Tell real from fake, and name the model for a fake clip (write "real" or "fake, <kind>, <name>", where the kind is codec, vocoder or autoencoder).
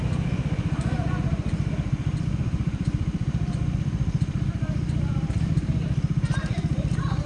fake, vocoder, BigVGAN v2